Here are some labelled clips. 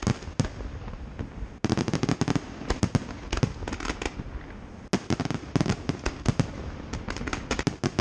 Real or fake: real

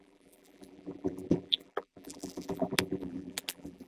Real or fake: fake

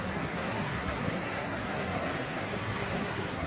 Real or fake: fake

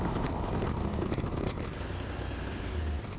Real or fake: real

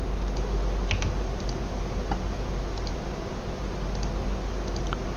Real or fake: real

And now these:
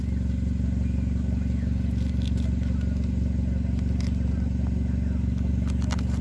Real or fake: real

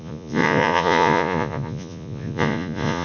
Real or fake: fake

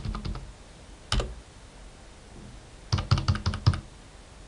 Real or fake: real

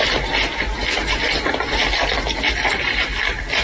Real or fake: real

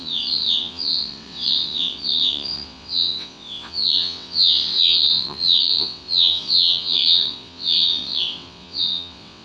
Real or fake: fake